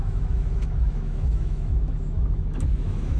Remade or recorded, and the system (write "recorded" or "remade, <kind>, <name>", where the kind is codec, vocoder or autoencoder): remade, autoencoder, DAC-VAE